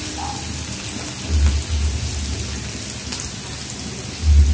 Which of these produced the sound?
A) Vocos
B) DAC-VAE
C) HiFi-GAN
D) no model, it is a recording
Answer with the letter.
D